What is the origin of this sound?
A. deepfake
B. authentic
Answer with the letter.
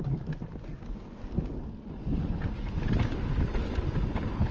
B